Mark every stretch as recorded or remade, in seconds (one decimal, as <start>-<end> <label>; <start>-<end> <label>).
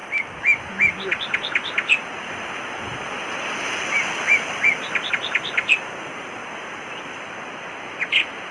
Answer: 0.0-8.5 recorded